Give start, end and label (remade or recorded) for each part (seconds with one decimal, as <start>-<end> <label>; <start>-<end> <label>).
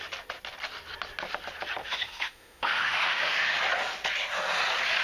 0.0-1.8 recorded; 1.8-3.6 remade; 3.6-5.0 recorded